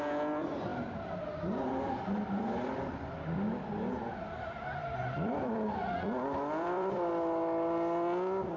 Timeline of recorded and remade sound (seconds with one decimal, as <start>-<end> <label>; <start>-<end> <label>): 0.0-0.7 recorded; 0.7-3.7 remade; 3.7-4.8 recorded; 4.8-7.1 remade; 7.1-8.6 recorded